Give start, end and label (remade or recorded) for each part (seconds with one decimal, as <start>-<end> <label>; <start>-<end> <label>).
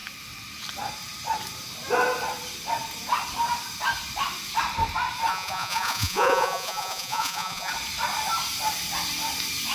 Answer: 0.0-5.3 recorded; 5.3-7.7 remade; 7.7-9.7 recorded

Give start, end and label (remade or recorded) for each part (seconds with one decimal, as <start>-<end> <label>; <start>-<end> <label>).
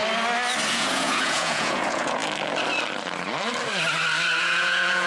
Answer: 0.0-0.7 recorded; 0.7-2.2 remade; 2.2-4.4 recorded; 4.4-5.1 remade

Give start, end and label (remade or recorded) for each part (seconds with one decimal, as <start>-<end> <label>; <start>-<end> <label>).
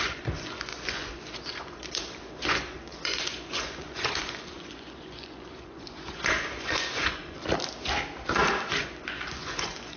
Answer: 0.0-7.4 remade; 7.4-8.7 recorded; 8.7-10.0 remade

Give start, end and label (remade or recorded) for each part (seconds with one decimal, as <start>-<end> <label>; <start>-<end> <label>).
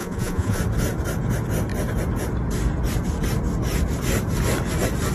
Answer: 0.0-0.6 remade; 0.6-5.1 recorded